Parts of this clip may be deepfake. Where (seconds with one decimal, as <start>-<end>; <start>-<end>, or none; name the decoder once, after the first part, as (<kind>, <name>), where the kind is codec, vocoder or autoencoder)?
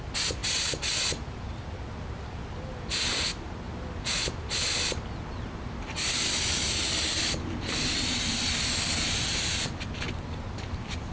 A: none